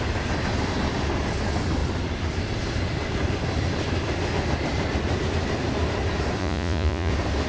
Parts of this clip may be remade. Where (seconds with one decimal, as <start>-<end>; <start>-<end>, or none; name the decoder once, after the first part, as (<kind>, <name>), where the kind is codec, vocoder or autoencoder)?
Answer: 6.4-7.1 (vocoder, Vocos)